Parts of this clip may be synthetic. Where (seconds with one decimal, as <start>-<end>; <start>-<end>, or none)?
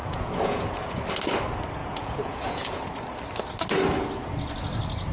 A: 0.0-1.0; 1.8-2.8